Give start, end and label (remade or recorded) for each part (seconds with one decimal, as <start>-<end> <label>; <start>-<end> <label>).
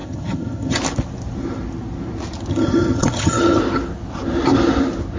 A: 0.0-0.8 remade; 0.8-2.5 recorded; 2.5-3.6 remade; 3.6-5.2 recorded